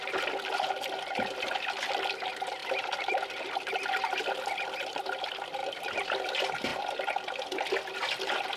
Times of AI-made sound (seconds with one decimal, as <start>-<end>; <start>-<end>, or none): 2.6-3.7; 5.6-6.3; 6.7-7.4